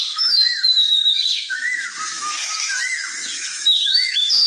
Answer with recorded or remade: remade